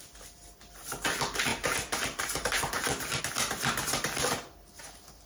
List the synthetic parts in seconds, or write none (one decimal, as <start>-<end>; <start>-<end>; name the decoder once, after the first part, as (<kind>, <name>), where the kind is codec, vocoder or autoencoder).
1.5-3.2 (vocoder, BigVGAN v2)